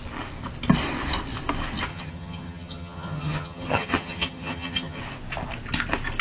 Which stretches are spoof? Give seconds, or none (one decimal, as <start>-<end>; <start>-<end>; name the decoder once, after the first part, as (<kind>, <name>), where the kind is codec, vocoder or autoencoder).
1.9-5.0 (vocoder, HiFi-GAN)